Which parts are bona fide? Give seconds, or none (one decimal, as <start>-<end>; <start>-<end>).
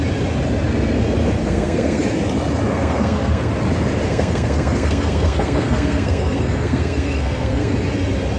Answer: 0.0-1.4; 2.0-2.7; 3.5-4.1; 7.7-8.4